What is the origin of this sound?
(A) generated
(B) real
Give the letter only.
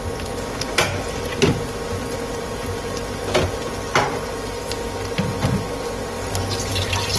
B